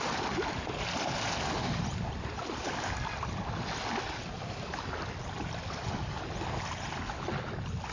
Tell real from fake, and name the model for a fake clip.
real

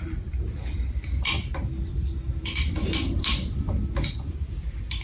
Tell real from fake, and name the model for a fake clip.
fake, vocoder, BigVGAN v2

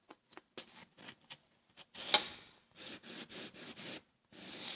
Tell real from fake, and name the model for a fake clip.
real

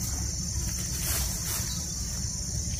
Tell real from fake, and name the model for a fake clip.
real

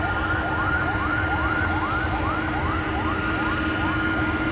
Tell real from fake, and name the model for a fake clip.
real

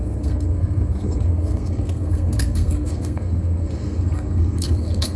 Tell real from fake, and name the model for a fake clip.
fake, codec, SNAC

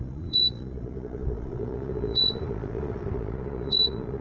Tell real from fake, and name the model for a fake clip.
fake, vocoder, Vocos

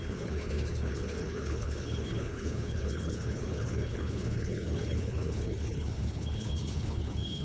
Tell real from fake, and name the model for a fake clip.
fake, codec, HILCodec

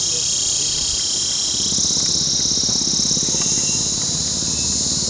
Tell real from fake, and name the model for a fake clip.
real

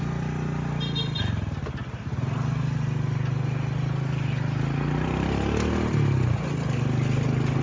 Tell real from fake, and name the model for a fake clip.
real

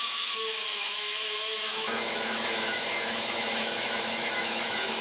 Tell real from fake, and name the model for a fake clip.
fake, autoencoder, DAC-VAE